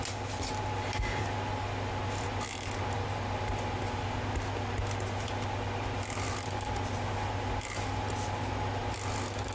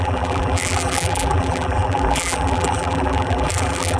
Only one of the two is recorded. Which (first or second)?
first